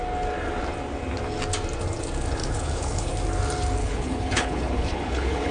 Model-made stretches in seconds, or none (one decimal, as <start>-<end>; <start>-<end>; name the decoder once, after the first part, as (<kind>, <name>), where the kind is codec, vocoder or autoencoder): 2.4-3.1 (codec, HILCodec); 3.8-5.5